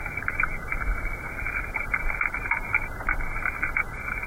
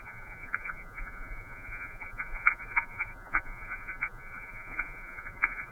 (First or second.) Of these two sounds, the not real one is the second